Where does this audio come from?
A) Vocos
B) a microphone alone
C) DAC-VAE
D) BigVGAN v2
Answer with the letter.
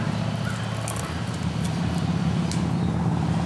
B